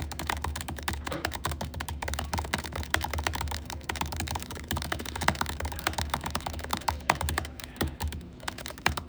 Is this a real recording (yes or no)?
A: no